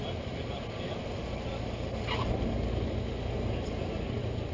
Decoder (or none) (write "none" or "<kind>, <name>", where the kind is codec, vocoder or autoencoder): none